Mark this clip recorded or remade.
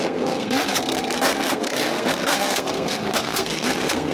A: remade